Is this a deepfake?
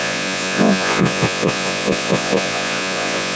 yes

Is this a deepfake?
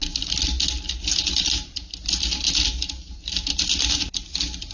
no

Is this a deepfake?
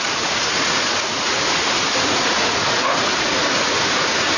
yes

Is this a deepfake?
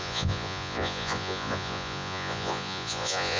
yes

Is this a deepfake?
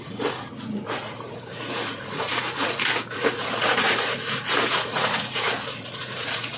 yes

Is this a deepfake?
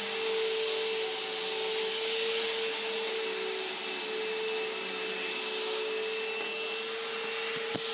no